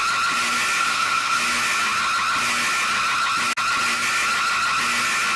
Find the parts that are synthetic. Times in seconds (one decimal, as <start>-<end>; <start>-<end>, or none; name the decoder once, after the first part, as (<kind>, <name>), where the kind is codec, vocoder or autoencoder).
0.8-1.4 (codec, SNAC)